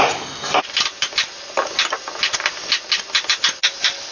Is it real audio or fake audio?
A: real